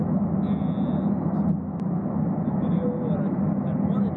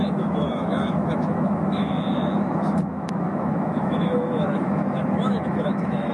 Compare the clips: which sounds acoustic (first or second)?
first